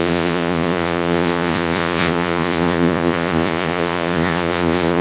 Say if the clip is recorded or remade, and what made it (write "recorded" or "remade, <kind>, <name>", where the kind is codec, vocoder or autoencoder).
remade, vocoder, Vocos